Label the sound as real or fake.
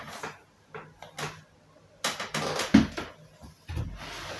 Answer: real